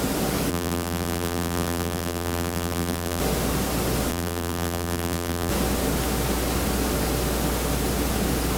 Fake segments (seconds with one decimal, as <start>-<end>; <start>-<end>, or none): 0.5-3.2; 4.1-5.5